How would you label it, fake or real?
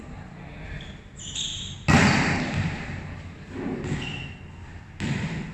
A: real